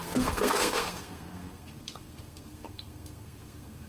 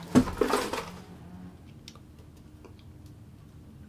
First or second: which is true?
second